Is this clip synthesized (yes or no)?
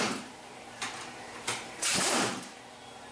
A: yes